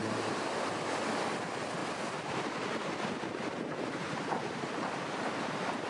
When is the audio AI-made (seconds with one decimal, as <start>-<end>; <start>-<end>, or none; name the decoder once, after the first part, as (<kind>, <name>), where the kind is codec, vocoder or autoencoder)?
0.0-0.7 (vocoder, BigVGAN v2)